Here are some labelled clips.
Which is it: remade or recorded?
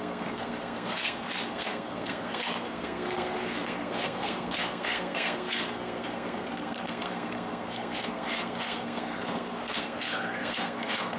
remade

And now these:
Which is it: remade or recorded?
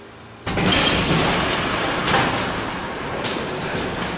recorded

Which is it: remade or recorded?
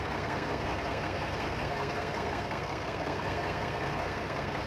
remade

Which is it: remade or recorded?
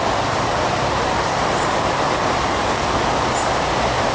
recorded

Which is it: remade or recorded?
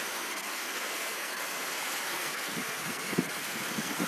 remade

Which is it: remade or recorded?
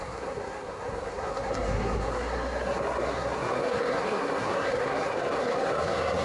remade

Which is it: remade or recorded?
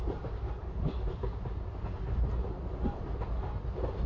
recorded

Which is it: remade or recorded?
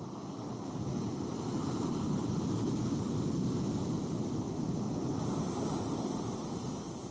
recorded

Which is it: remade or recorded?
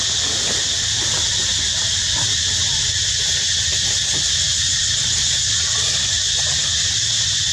recorded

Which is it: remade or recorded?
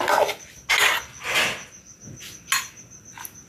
recorded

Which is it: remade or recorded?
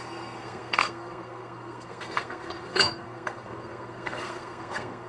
remade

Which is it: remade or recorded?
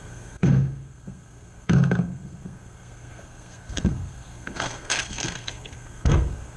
remade